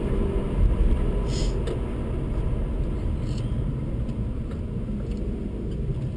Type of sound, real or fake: real